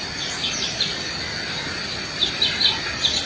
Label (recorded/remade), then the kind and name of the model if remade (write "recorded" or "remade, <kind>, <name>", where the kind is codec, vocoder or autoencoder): recorded